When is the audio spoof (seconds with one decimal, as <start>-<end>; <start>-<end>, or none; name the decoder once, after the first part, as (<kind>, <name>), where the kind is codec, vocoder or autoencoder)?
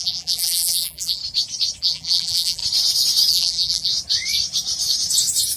0.0-1.2 (vocoder, BigVGAN v2); 1.8-2.6; 3.3-3.9